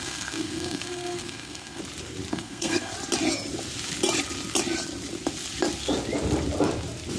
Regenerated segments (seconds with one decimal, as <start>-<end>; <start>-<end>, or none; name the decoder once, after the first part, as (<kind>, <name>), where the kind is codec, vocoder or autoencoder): 0.0-1.8 (codec, SNAC); 2.3-2.9